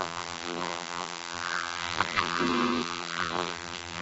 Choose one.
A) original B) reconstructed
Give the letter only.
B